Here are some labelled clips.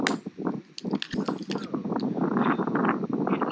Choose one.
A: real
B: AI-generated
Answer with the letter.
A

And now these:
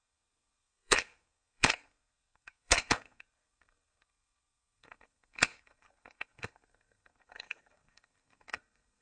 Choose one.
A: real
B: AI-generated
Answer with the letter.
B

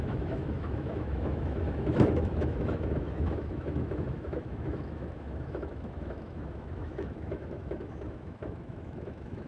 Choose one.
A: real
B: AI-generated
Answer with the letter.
B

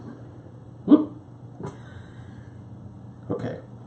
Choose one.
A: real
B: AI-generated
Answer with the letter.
A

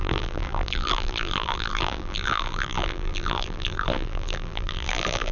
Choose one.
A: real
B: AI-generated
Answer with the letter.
B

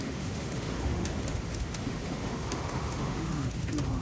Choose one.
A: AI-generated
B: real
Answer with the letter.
A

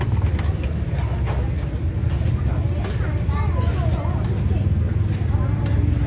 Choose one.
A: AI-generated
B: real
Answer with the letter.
B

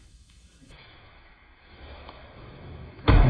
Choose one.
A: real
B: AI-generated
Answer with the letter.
B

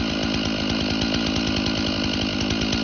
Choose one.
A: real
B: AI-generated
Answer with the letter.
A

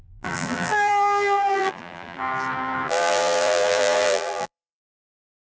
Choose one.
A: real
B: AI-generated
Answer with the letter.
B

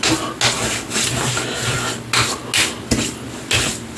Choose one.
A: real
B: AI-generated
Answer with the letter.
A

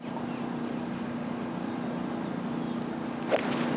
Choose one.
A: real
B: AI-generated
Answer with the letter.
A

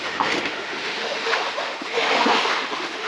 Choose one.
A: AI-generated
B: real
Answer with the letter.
A